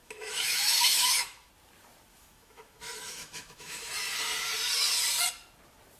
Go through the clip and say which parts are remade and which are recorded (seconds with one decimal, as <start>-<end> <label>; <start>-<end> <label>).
0.0-1.5 remade; 1.5-2.1 recorded; 2.1-3.9 remade; 3.9-6.0 recorded